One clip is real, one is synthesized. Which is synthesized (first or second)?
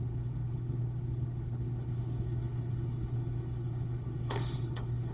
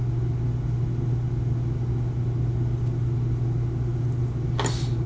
first